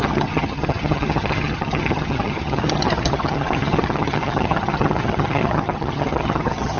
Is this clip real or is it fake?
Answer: fake